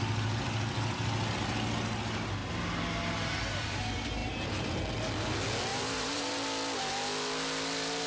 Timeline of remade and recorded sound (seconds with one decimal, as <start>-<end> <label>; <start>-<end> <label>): 0.0-4.2 recorded; 4.2-4.8 remade; 4.8-5.7 recorded; 5.7-6.3 remade; 6.3-8.1 recorded